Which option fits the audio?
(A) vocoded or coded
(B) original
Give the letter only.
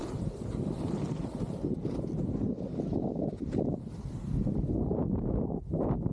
B